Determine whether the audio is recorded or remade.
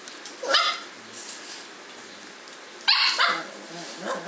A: recorded